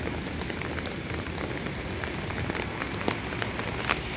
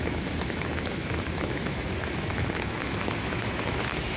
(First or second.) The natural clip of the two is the first